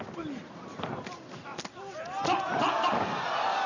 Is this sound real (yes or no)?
yes